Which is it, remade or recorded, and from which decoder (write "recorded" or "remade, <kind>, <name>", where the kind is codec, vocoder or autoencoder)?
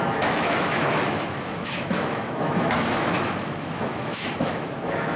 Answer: remade, autoencoder, DAC-VAE